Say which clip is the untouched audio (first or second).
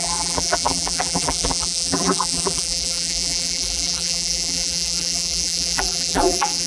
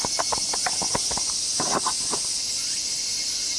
second